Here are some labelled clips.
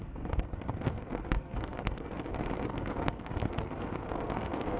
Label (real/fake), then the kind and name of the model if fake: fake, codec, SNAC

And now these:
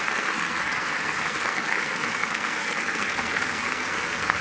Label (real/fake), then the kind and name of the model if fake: fake, codec, SNAC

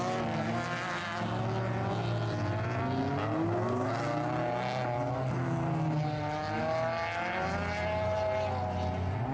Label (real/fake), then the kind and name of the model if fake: real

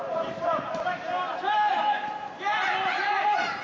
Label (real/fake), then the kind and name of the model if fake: real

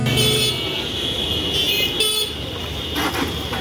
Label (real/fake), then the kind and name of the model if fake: real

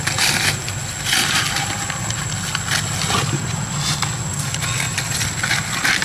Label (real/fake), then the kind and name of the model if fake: real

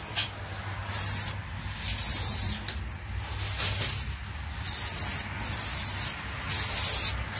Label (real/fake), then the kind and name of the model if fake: real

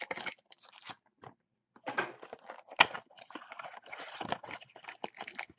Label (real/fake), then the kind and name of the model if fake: real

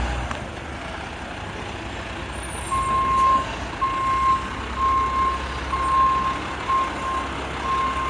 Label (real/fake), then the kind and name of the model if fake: real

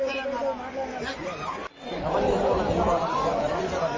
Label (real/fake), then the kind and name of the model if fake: real